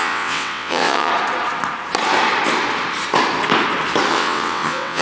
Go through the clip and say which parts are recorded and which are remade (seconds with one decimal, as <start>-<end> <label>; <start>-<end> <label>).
0.0-1.1 remade; 1.1-4.1 recorded; 4.1-5.0 remade